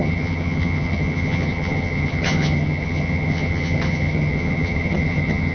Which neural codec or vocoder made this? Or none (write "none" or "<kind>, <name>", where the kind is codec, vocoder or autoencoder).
vocoder, HiFi-GAN